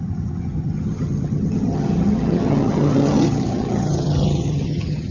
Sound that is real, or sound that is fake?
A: fake